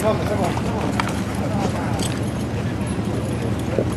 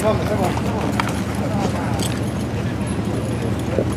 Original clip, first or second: second